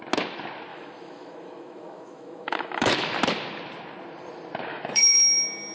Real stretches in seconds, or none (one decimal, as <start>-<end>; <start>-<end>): 0.0-0.7; 2.9-4.7; 5.2-5.7